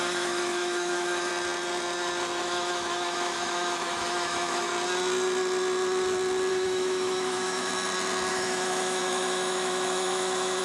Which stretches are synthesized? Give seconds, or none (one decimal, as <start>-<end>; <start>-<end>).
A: 0.0-1.3; 2.4-4.7; 6.5-7.7; 8.3-10.6